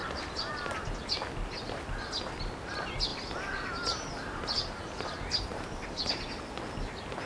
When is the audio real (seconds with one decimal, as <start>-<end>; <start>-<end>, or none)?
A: 0.0-3.1; 6.2-7.3